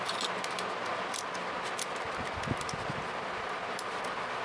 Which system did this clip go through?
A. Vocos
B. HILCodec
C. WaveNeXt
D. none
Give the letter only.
D